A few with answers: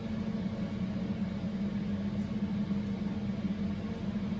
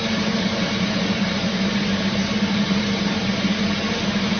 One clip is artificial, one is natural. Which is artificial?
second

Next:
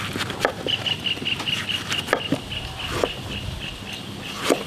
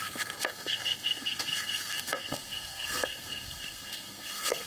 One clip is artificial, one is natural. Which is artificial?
second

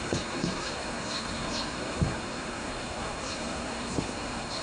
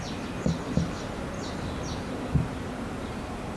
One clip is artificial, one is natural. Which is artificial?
first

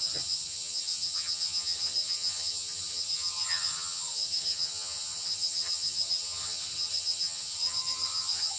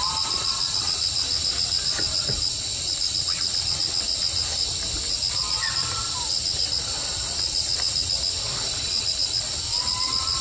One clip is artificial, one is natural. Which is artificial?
first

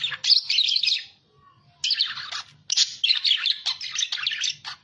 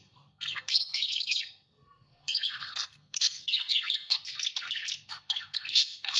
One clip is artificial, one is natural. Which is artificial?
second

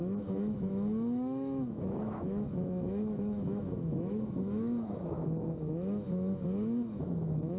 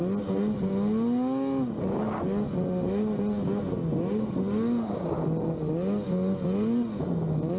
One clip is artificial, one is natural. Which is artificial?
first